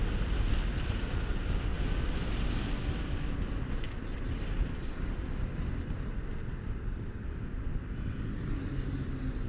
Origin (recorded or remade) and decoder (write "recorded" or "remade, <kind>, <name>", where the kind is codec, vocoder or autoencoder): recorded